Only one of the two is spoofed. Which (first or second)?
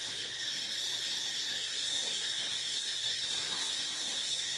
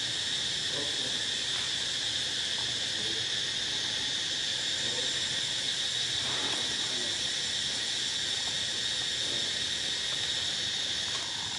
first